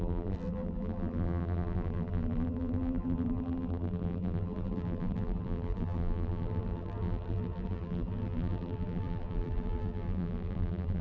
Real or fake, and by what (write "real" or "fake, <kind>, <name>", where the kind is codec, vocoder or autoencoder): fake, vocoder, BigVGAN v2